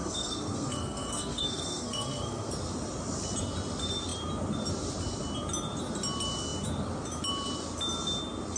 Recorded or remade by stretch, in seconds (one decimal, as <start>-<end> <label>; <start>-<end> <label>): 0.0-2.5 remade; 2.5-8.6 recorded